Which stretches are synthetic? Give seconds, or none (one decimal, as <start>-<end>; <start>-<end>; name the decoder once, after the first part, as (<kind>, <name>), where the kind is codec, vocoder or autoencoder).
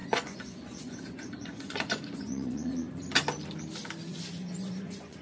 0.0-3.1 (vocoder, Vocos); 4.1-5.2